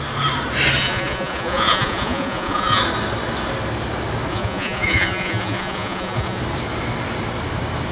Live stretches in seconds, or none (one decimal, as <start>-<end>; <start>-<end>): 0.0-0.8; 2.8-4.3; 6.4-7.9